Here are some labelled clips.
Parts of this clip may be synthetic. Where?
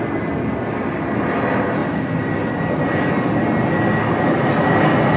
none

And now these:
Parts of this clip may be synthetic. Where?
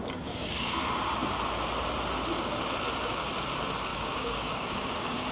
0.0-0.7 (codec, DAC); 3.9-5.3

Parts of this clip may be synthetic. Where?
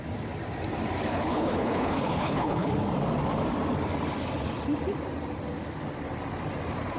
1.1-2.7 (codec, HILCodec)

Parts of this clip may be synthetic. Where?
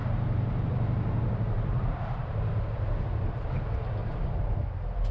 0.0-3.1 (vocoder, BigVGAN v2); 4.0-4.5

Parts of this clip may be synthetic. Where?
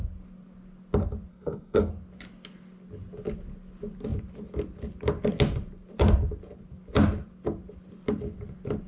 1.3-1.9 (codec, SNAC)